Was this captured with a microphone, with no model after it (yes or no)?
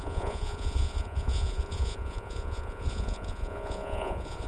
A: no